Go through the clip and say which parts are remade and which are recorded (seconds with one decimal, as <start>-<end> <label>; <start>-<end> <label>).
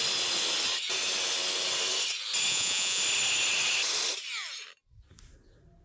0.0-2.5 recorded; 2.5-3.0 remade; 3.0-5.8 recorded